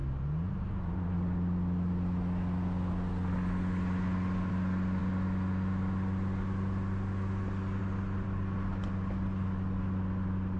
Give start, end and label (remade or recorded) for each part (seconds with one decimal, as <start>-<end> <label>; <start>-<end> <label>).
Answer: 0.0-10.6 recorded